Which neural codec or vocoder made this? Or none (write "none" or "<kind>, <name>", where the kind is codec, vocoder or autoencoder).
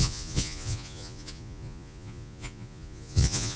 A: vocoder, Vocos